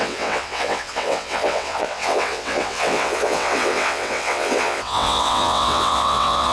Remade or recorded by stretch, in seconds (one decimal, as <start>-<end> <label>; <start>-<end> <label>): 0.0-6.5 remade